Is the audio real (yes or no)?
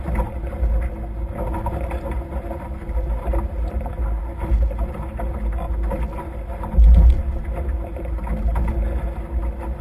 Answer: yes